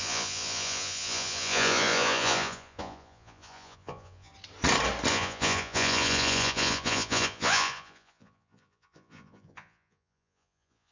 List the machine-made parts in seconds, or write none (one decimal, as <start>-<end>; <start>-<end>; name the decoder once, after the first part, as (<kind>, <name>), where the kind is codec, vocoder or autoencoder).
0.0-4.3 (vocoder, Vocos); 5.1-10.9